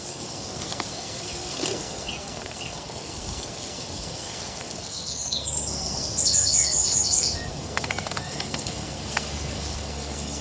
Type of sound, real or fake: fake